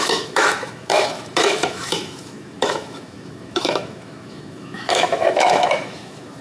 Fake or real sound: fake